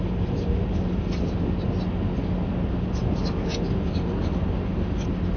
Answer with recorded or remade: recorded